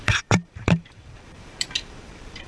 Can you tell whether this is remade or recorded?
remade